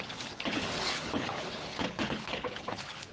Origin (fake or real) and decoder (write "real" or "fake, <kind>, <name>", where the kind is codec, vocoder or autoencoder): fake, codec, HILCodec